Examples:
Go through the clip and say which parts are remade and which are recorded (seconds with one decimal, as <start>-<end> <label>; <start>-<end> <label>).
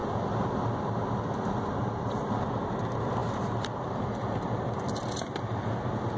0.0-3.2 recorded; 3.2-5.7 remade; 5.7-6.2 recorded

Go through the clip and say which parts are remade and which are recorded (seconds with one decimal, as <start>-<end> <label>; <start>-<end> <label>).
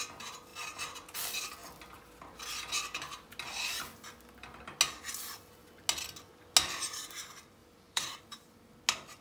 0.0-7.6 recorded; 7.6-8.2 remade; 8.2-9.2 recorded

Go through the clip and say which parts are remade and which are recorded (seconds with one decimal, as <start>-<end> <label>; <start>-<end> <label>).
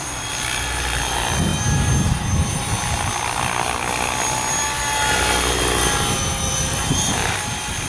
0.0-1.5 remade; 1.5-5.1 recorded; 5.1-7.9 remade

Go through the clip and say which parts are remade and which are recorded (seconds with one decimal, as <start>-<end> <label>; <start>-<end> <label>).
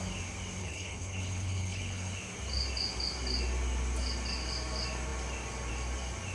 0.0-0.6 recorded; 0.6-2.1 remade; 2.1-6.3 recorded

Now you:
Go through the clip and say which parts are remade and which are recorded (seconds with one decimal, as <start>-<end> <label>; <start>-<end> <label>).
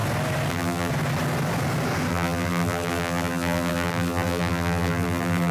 0.0-0.5 recorded; 0.5-0.9 remade; 0.9-2.1 recorded; 2.1-5.5 remade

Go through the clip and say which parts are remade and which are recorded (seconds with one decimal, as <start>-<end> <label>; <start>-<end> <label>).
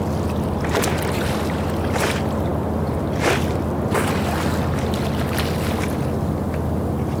0.0-7.2 recorded